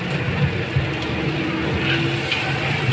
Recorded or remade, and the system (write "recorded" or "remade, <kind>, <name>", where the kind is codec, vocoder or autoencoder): recorded